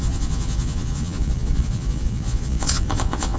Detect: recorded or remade remade